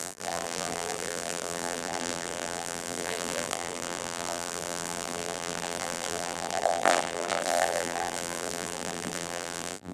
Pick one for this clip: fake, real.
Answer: fake